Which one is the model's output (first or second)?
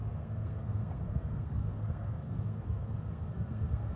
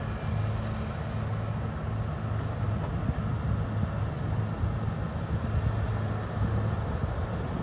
first